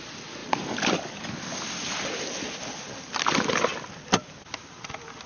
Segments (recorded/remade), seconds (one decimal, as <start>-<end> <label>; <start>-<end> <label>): 0.0-0.4 recorded; 0.4-1.9 remade; 1.9-3.7 recorded; 3.7-4.2 remade; 4.2-5.3 recorded